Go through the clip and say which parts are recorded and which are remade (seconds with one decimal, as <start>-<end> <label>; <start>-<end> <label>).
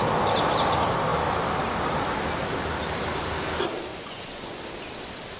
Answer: 0.0-3.9 recorded; 3.9-4.6 remade; 4.6-5.4 recorded